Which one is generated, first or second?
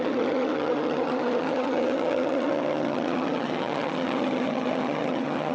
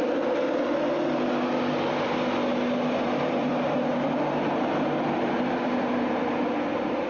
first